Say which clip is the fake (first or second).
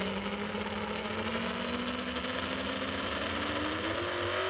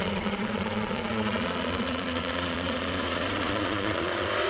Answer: second